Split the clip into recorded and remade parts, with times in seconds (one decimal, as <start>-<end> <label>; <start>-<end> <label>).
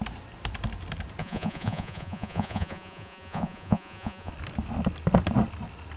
0.0-1.2 recorded; 1.2-4.3 remade; 4.3-6.0 recorded